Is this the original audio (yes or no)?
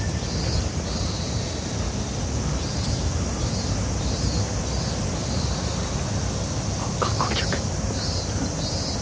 yes